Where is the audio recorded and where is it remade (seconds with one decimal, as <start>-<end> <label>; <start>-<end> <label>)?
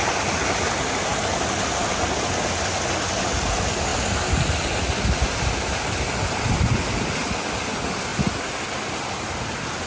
0.0-1.1 recorded; 1.1-1.8 remade; 1.8-9.9 recorded